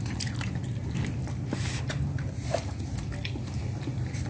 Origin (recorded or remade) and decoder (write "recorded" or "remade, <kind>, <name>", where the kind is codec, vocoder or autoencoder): recorded